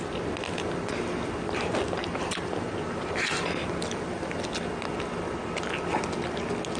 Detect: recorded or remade recorded